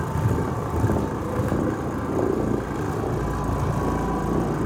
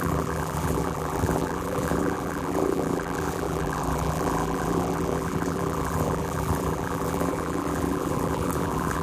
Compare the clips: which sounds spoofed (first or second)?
second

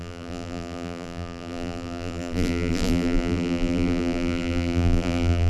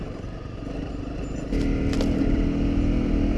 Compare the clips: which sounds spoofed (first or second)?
first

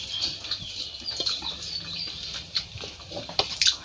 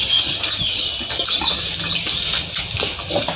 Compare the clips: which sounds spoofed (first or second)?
first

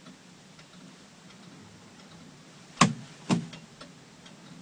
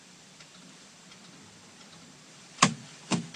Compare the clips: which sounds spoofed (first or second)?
second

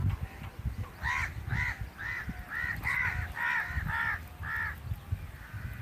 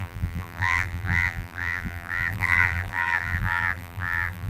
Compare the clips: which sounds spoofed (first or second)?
second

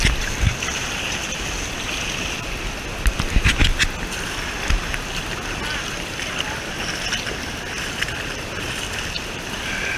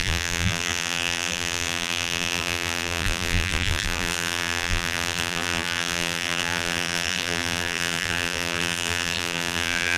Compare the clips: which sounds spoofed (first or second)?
second